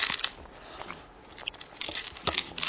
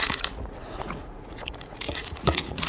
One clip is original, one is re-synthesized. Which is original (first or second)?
first